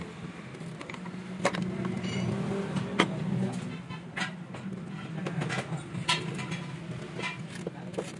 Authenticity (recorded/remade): recorded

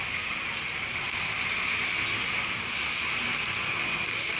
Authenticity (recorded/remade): recorded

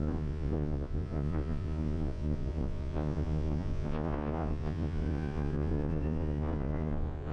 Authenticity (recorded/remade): remade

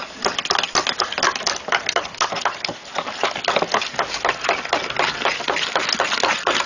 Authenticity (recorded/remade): recorded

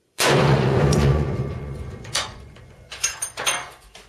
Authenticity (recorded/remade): remade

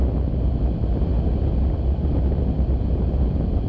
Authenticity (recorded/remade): recorded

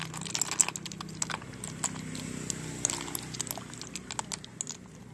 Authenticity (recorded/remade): recorded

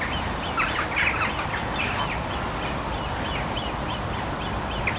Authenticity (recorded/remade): recorded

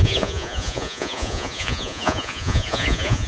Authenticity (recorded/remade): remade